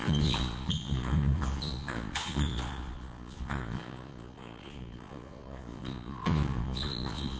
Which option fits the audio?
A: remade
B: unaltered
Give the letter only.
A